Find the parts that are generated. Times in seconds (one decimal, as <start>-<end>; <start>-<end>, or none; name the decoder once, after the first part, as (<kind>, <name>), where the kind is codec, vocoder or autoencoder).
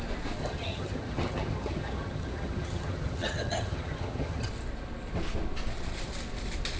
0.4-4.5 (vocoder, HiFi-GAN)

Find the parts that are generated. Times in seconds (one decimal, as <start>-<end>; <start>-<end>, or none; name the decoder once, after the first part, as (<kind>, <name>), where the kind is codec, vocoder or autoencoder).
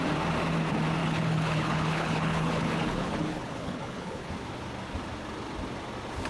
1.0-4.3 (codec, HILCodec)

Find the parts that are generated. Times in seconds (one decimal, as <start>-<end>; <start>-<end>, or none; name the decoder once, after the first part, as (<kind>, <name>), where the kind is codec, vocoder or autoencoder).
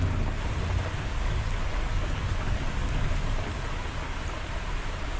1.1-4.2 (codec, DAC)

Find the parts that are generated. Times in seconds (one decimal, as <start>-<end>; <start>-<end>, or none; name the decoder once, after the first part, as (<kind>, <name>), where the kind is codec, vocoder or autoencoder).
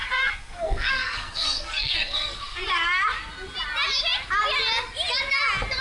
0.0-2.7 (codec, SNAC)